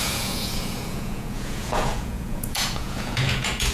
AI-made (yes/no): yes